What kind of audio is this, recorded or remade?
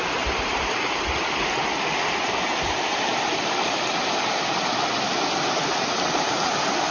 recorded